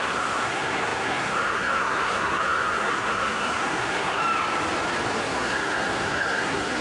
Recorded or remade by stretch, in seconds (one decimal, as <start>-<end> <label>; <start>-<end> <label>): 0.0-4.2 remade; 4.2-5.2 recorded; 5.2-6.8 remade